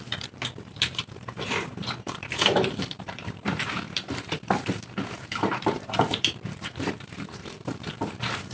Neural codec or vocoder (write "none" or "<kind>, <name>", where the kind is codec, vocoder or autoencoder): vocoder, BigVGAN v2